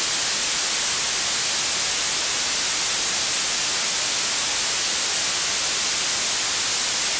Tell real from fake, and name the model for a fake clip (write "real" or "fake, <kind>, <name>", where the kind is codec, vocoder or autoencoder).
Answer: real